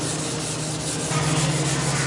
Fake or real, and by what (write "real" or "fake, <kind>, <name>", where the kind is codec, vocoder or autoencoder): real